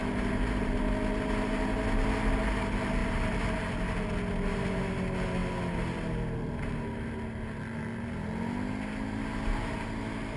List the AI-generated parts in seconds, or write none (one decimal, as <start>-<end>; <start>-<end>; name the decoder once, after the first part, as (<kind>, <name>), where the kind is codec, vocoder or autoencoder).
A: none